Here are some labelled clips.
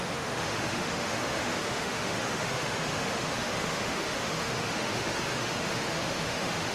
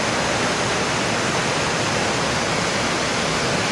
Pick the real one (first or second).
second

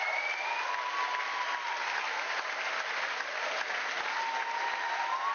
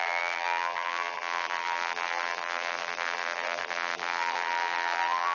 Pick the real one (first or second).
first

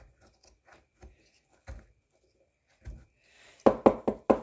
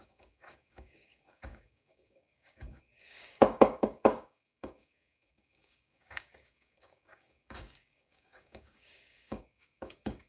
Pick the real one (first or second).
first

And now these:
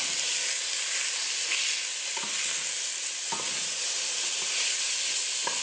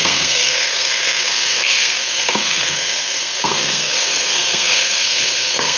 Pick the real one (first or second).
first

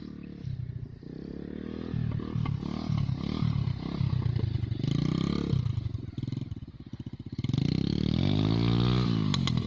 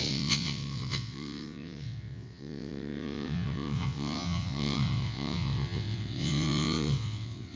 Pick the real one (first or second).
first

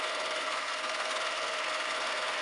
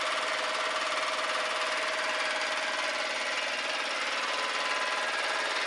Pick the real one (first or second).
second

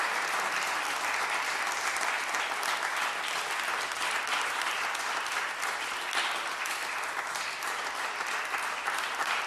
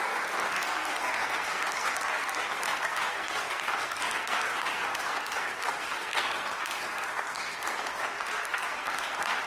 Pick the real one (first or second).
first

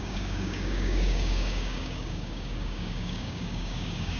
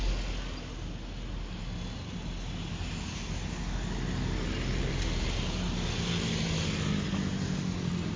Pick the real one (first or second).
second